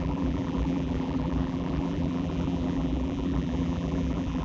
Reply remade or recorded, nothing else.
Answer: remade